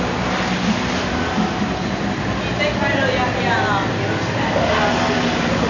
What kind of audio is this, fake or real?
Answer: real